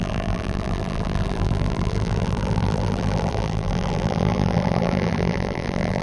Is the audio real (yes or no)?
no